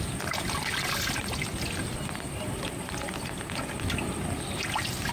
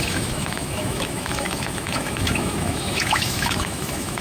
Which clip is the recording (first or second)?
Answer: first